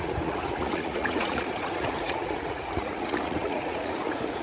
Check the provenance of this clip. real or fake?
fake